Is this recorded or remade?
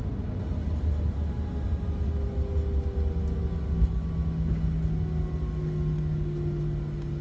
recorded